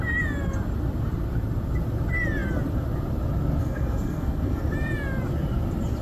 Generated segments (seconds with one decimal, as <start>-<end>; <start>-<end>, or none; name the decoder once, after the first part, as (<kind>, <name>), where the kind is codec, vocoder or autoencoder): 3.6-4.6 (codec, SNAC)